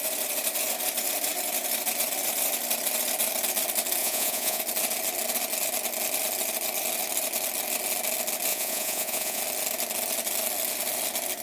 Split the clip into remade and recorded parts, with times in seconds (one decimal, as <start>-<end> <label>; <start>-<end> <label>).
0.0-4.0 recorded; 4.0-4.6 remade; 4.6-8.5 recorded; 8.5-9.4 remade; 9.4-11.4 recorded